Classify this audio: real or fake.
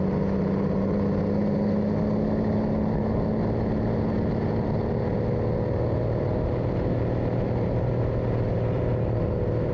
real